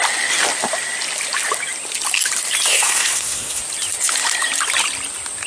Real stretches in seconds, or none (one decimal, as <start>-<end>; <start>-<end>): 0.0-2.7; 3.6-5.5